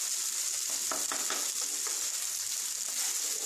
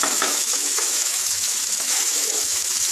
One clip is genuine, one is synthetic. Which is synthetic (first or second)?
second